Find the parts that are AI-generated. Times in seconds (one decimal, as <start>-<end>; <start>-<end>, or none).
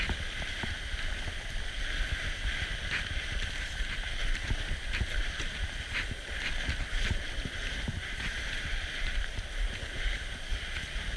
7.9-9.5